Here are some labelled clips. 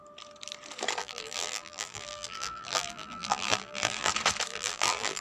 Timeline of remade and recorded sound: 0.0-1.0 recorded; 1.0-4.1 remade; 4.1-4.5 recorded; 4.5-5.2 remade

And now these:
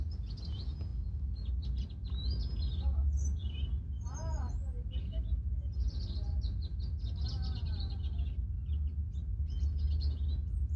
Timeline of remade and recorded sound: 0.0-10.8 recorded